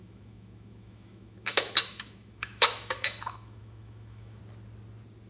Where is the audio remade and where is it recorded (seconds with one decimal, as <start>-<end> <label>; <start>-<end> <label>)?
0.0-4.4 remade; 4.4-5.3 recorded

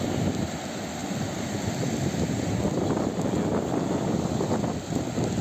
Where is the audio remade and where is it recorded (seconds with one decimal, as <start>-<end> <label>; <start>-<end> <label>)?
0.0-5.4 recorded

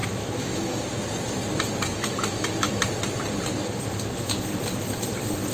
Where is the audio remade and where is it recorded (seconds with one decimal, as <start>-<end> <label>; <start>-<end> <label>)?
0.0-0.8 remade; 0.8-1.9 recorded; 1.9-2.8 remade; 2.8-5.5 recorded

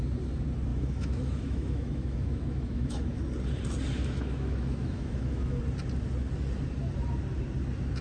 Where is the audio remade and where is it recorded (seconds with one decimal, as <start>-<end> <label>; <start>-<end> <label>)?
0.0-0.7 recorded; 0.7-3.2 remade; 3.2-4.0 recorded; 4.0-5.6 remade; 5.6-8.0 recorded

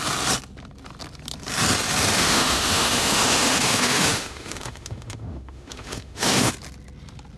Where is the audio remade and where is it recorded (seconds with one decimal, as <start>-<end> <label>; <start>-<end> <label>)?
0.0-2.1 recorded; 2.1-6.5 remade; 6.5-7.4 recorded

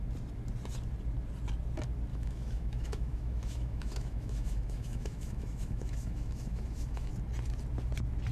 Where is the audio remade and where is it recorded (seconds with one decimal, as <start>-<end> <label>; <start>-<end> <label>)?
0.0-2.1 recorded; 2.1-7.1 remade; 7.1-8.3 recorded

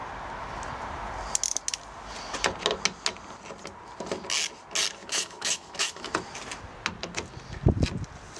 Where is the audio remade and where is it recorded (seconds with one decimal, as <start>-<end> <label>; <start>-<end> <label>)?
0.0-5.0 recorded; 5.0-6.1 remade; 6.1-8.4 recorded

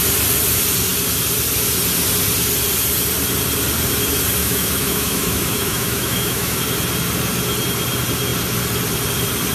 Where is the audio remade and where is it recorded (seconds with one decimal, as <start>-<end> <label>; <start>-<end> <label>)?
0.0-4.4 recorded; 4.4-6.6 remade; 6.6-9.5 recorded